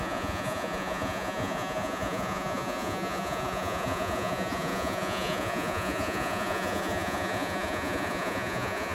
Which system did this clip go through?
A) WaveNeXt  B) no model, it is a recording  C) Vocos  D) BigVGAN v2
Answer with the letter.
C